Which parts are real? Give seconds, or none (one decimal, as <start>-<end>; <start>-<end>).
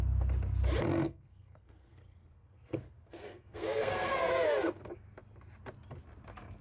0.0-0.8; 4.8-6.6